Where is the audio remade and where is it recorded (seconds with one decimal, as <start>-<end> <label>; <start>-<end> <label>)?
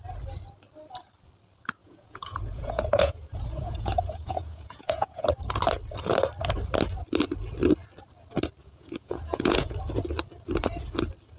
0.0-1.8 recorded; 1.8-5.3 remade; 5.3-8.6 recorded; 8.6-9.8 remade; 9.8-11.4 recorded